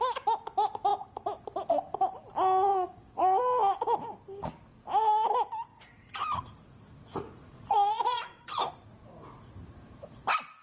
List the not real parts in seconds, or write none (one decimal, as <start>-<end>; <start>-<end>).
2.7-3.4; 5.7-8.7